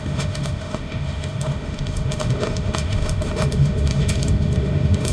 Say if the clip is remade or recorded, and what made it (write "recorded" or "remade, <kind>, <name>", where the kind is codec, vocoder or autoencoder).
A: remade, autoencoder, DAC-VAE